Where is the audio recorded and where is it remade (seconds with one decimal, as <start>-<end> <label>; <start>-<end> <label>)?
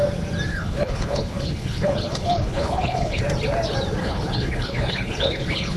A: 0.0-0.5 recorded; 0.5-3.2 remade; 3.2-4.0 recorded; 4.0-5.8 remade